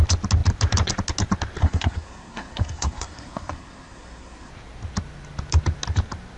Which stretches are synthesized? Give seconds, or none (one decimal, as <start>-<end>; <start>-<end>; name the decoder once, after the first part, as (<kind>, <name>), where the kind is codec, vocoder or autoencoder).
1.6-4.5 (codec, SNAC)